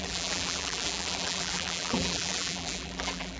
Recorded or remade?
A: remade